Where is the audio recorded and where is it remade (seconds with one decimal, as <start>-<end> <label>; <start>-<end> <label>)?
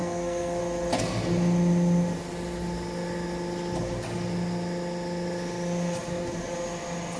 0.0-0.6 remade; 0.6-7.2 recorded